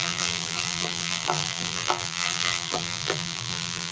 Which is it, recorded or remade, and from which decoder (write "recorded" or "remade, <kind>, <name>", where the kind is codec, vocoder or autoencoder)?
remade, vocoder, BigVGAN v2